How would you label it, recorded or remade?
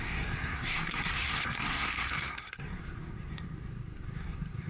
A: remade